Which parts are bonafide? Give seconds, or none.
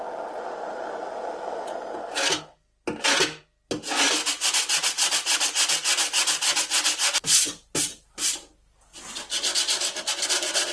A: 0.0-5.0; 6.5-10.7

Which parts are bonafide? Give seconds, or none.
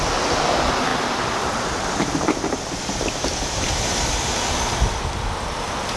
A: 0.0-0.9; 4.5-6.0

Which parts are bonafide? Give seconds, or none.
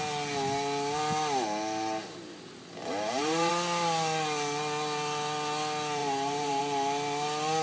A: 0.0-2.8; 3.5-6.0; 6.6-7.6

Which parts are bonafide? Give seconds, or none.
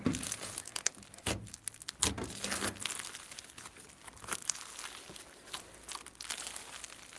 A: 0.0-7.2